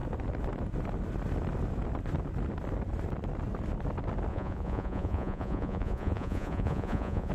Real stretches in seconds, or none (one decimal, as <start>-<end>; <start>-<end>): 0.0-4.3